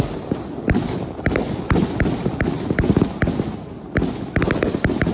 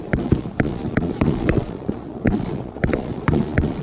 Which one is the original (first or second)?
first